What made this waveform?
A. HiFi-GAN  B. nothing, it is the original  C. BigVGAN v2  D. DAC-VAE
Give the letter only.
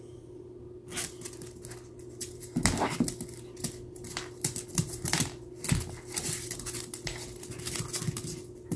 B